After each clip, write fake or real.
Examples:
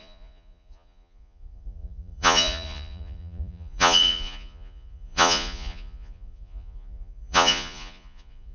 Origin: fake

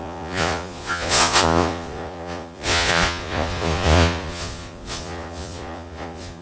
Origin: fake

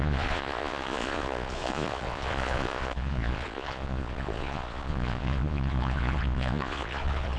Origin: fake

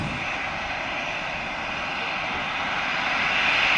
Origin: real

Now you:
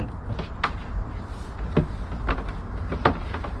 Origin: real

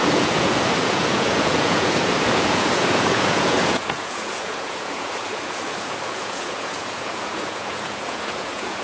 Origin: fake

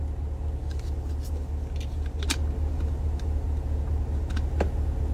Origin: real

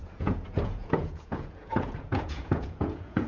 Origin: fake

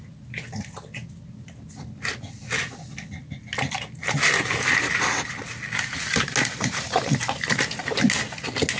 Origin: real